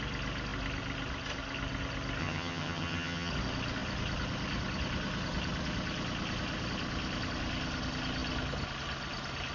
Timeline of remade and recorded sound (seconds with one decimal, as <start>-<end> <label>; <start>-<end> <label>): 0.0-2.2 recorded; 2.2-3.3 remade; 3.3-9.5 recorded